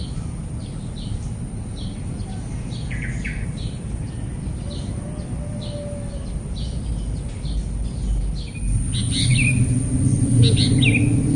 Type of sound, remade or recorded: recorded